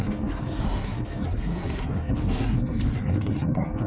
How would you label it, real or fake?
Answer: fake